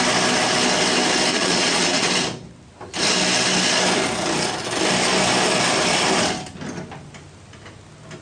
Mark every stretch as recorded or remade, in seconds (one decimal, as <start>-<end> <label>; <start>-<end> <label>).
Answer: 0.0-1.3 recorded; 1.3-2.1 remade; 2.1-8.2 recorded